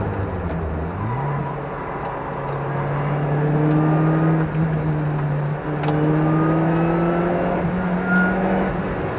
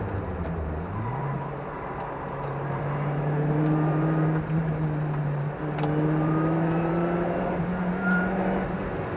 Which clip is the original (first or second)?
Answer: first